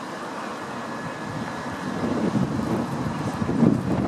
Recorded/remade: recorded